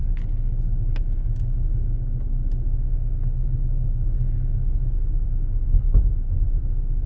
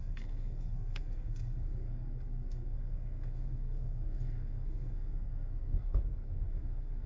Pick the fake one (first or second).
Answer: second